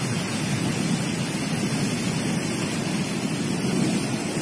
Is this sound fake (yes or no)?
no